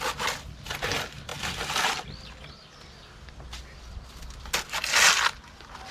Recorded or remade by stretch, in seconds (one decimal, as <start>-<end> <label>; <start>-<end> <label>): 0.0-5.9 recorded